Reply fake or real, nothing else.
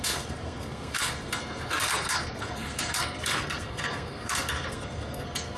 fake